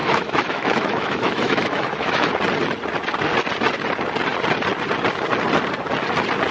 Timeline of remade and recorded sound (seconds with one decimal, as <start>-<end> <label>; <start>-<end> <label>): 0.0-2.3 remade; 2.3-6.5 recorded